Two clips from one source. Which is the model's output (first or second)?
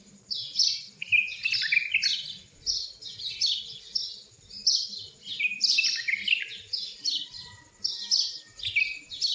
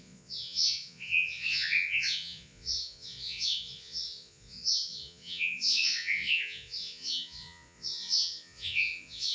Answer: second